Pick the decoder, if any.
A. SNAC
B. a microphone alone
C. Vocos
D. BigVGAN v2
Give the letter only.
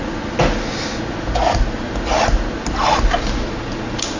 B